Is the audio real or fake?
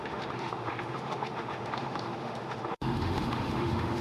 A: fake